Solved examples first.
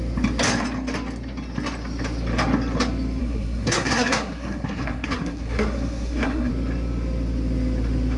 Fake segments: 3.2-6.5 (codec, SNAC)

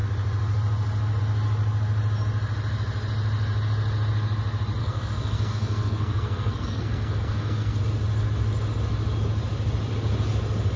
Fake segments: 4.8-7.8 (codec, SNAC)